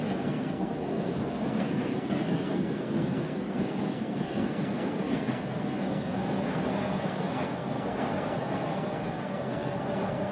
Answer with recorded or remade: remade